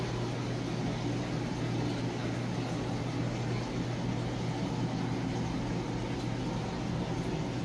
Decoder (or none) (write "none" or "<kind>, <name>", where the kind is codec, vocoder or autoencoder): none